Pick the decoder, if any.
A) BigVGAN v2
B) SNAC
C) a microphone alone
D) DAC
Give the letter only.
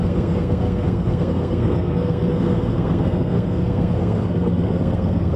B